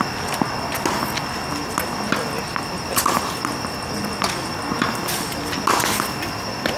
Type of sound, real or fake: real